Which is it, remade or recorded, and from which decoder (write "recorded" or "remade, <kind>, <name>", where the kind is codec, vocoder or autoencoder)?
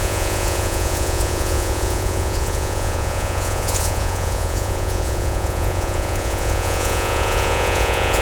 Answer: remade, vocoder, Vocos